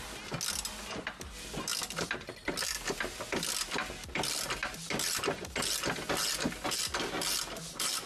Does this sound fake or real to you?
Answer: real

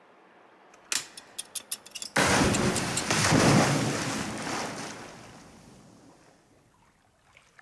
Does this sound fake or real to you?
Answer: real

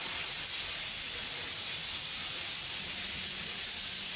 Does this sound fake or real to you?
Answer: real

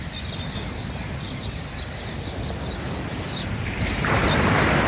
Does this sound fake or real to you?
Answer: real